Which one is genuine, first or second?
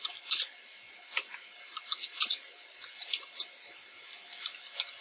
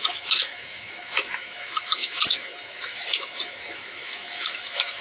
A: first